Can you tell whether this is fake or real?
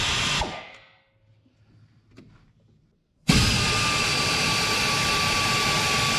real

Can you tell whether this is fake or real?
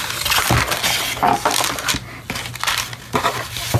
real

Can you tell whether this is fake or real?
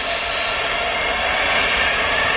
real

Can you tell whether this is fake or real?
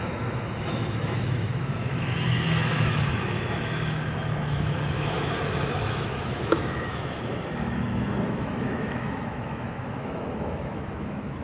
fake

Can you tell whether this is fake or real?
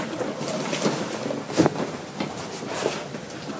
real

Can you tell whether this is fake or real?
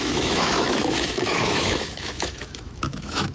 fake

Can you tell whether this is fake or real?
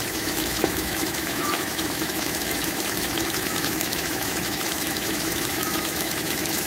fake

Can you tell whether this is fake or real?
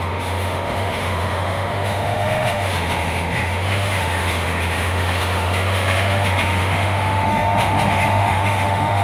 fake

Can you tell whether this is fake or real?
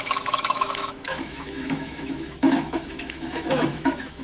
fake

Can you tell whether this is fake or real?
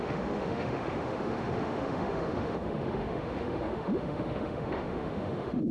fake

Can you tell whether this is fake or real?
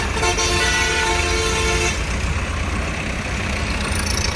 real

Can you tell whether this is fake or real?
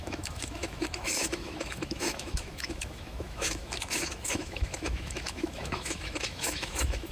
fake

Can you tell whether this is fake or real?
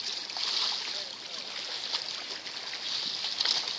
real